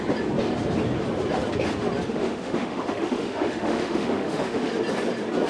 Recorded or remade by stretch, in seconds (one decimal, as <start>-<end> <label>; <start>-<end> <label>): 0.0-2.1 recorded; 2.1-4.7 remade; 4.7-5.5 recorded